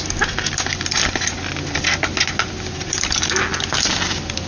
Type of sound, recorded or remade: recorded